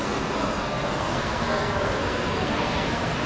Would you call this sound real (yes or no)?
no